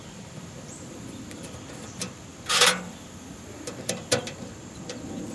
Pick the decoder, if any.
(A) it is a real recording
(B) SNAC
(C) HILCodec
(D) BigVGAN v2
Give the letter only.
D